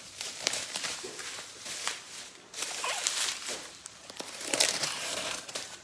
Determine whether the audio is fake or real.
fake